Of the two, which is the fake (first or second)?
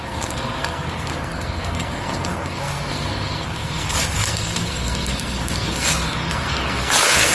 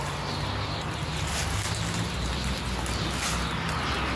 first